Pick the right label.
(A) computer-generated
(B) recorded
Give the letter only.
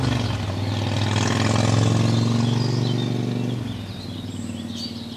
B